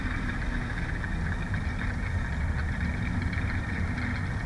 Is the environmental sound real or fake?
real